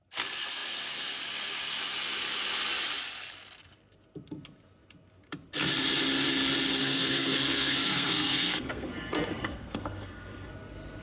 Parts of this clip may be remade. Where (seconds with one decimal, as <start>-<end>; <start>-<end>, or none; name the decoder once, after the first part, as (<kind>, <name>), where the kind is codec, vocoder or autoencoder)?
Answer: 6.8-10.5 (codec, SNAC)